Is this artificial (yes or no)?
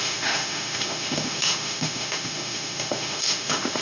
yes